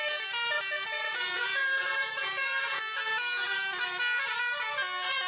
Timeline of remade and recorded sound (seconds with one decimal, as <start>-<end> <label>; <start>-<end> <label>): 0.0-1.0 recorded; 1.0-2.8 remade; 2.8-5.3 recorded

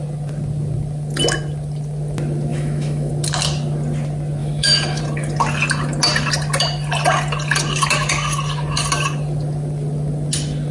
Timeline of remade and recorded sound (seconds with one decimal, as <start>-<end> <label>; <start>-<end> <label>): 0.0-2.5 recorded; 2.5-3.1 remade; 3.1-4.4 recorded; 4.4-5.0 remade; 5.0-10.7 recorded

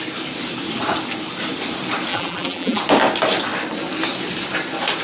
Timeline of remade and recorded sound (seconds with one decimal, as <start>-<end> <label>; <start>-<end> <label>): 0.0-2.1 recorded; 2.1-2.8 remade; 2.8-5.0 recorded

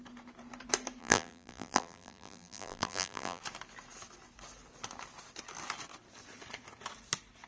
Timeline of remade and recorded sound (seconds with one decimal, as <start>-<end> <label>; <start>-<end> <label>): 0.0-1.0 recorded; 1.0-3.4 remade; 3.4-7.5 recorded

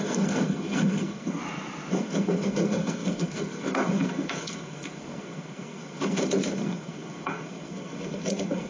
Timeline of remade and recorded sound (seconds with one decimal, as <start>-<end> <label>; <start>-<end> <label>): 0.0-1.4 remade; 1.4-1.9 recorded; 1.9-8.7 remade